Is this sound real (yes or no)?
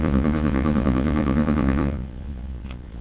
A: no